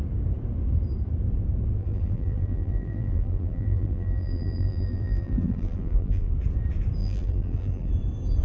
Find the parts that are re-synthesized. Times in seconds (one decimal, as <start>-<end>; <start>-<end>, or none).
1.8-6.3; 7.0-7.9